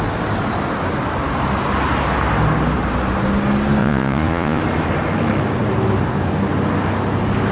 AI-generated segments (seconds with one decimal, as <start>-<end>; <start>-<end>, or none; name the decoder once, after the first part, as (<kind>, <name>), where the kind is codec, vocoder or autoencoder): 3.8-4.6 (vocoder, Vocos)